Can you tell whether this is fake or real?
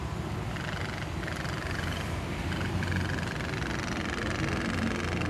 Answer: real